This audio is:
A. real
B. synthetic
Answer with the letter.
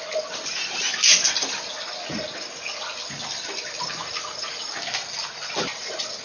A